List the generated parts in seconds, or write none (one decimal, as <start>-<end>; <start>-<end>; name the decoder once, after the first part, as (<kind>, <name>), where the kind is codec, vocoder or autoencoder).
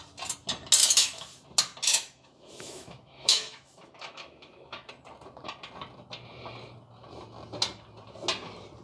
0.8-1.4 (autoencoder, DAC-VAE); 1.9-4.9